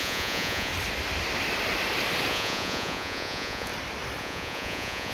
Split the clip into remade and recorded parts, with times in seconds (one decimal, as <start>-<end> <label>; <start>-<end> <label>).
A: 0.0-0.7 remade; 0.7-2.3 recorded; 2.3-3.7 remade; 3.7-4.2 recorded; 4.2-5.1 remade